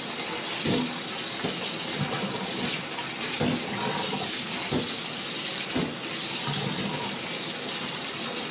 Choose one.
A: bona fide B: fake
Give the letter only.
A